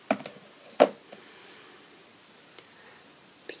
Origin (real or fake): real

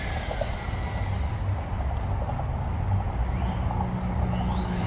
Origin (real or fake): real